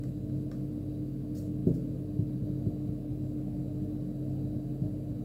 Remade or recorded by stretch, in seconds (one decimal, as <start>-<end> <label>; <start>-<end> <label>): 0.0-5.2 recorded